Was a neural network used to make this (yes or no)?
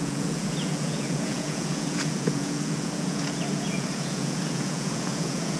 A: yes